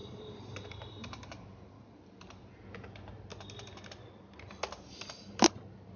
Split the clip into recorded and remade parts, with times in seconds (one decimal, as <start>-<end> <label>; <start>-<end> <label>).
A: 0.0-2.5 remade; 2.5-6.0 recorded